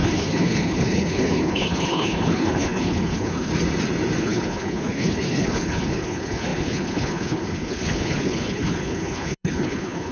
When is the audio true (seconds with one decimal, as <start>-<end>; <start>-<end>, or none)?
3.5-4.2